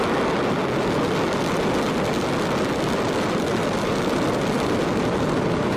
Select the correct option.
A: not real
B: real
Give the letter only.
B